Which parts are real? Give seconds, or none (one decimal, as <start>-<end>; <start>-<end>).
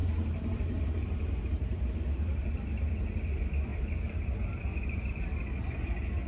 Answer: 2.9-3.7; 5.2-6.3